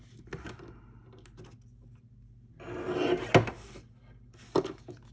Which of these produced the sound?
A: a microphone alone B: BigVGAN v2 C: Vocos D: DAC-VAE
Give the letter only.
A